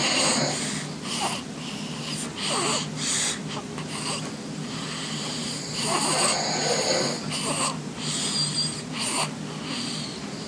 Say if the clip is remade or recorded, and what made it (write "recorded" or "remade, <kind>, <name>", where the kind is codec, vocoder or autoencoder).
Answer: recorded